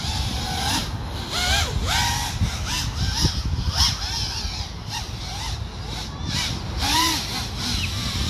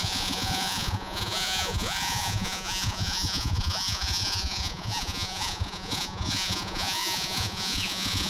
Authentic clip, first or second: first